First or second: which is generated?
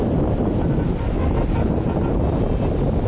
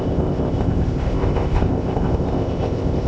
second